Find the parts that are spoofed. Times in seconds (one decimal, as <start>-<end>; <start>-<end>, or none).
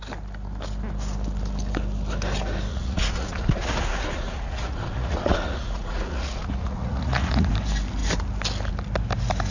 2.7-7.5